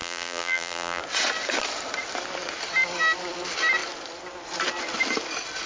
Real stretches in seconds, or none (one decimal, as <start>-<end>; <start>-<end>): 1.0-5.7